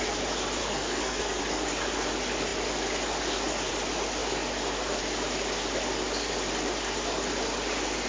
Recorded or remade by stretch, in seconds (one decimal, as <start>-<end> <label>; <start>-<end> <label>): 0.0-0.6 recorded; 0.6-1.4 remade; 1.4-8.1 recorded